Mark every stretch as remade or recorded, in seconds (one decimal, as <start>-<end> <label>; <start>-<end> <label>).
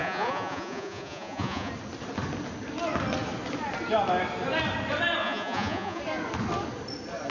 0.0-1.7 remade; 1.7-5.2 recorded; 5.2-6.0 remade; 6.0-7.3 recorded